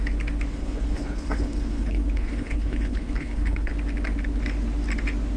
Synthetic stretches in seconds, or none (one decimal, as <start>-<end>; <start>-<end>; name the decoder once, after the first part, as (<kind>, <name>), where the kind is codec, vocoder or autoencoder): 0.5-3.7 (codec, HILCodec)